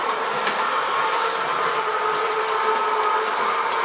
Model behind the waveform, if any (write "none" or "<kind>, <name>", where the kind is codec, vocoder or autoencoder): none